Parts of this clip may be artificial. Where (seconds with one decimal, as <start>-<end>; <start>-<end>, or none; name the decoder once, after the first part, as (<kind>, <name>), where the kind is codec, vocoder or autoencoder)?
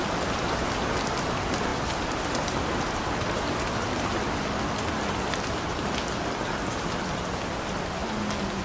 none